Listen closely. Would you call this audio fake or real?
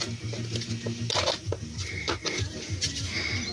real